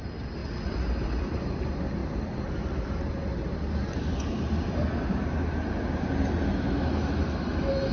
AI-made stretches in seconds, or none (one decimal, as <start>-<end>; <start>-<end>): none